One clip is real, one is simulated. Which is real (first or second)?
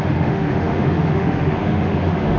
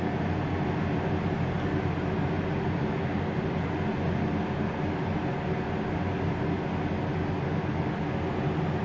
second